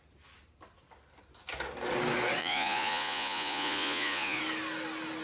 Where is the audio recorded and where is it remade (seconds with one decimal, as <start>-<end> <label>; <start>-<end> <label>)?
0.0-2.4 recorded; 2.4-4.4 remade; 4.4-5.2 recorded